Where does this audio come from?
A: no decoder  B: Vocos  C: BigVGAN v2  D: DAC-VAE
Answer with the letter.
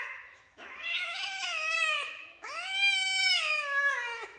D